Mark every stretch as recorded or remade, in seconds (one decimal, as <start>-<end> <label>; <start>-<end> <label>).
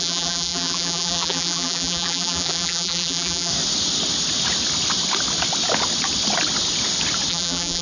0.0-3.5 remade; 3.5-7.3 recorded; 7.3-7.8 remade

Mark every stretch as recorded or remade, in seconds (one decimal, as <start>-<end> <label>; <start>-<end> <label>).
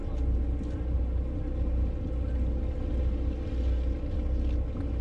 0.0-5.0 recorded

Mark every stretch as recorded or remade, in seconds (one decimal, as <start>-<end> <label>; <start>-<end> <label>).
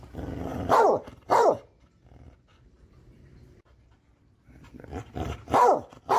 0.0-0.5 recorded; 0.5-1.5 remade; 1.5-2.5 recorded; 2.5-6.2 remade